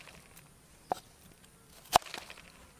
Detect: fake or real real